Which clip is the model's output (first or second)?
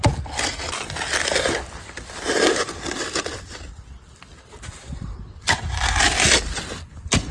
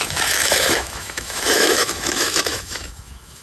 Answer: second